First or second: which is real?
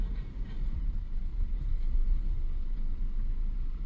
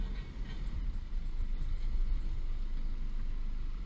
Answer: second